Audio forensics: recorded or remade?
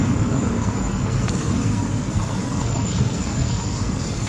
remade